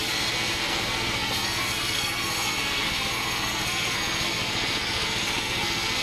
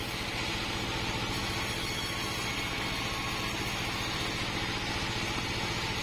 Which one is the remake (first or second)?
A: first